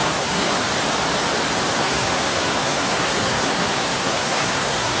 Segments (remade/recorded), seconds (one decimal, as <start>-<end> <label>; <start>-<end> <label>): 0.0-0.6 remade; 0.6-1.8 recorded; 1.8-5.0 remade